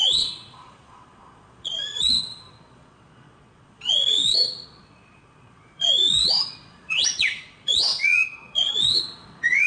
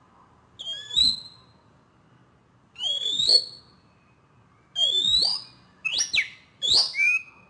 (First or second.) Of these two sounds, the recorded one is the second